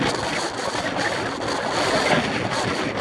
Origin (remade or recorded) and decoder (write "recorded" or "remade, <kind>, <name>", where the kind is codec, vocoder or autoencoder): recorded